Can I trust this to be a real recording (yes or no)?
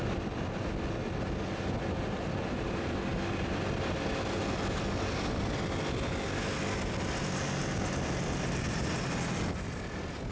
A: yes